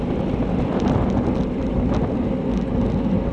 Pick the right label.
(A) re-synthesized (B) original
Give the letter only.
B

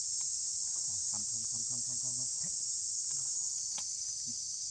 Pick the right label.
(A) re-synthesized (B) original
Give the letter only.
A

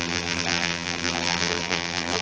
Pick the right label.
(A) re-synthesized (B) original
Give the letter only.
A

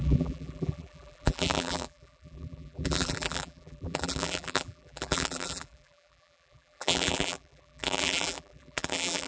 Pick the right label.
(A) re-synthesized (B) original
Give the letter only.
A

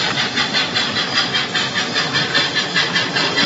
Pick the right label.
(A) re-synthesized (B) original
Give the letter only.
A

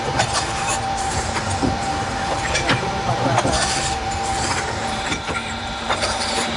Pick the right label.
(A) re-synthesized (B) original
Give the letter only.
A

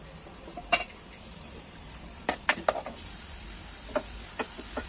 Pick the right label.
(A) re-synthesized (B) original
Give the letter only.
A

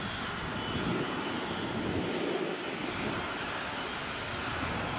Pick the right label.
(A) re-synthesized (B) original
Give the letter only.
B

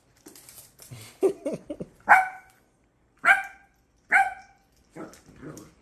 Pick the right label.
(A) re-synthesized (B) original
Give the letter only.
A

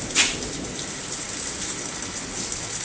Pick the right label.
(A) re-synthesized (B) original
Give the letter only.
B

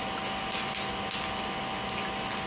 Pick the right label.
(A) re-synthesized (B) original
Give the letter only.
B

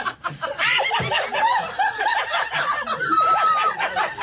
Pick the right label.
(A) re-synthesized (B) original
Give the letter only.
A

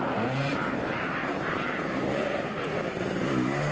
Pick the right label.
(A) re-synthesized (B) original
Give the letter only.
A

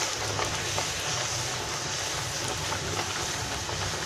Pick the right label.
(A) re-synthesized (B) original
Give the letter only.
B